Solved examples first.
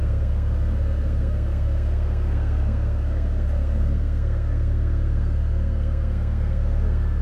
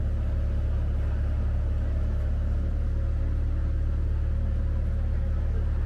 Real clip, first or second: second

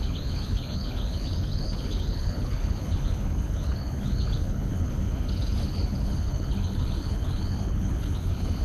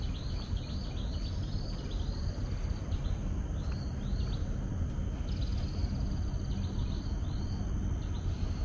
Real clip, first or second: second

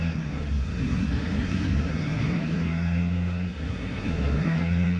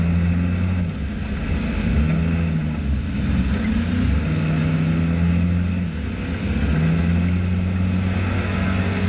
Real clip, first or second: second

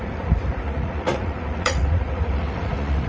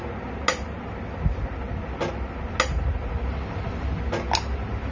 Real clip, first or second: second